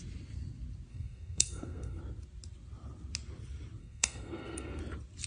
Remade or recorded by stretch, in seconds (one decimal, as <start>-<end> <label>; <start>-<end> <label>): 0.0-0.9 recorded; 0.9-2.0 remade; 2.0-3.8 recorded; 3.8-4.8 remade; 4.8-5.3 recorded